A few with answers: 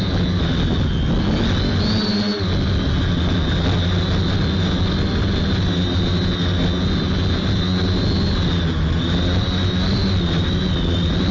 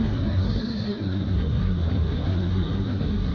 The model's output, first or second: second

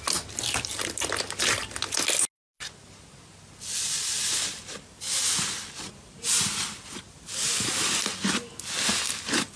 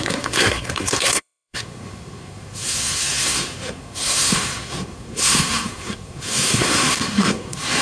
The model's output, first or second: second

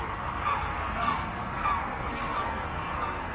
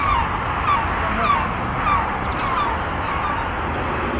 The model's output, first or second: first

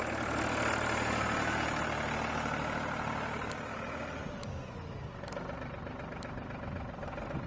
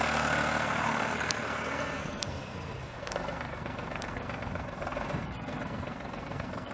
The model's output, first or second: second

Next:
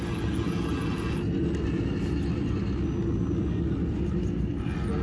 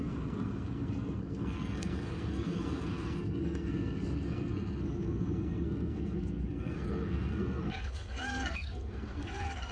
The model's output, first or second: second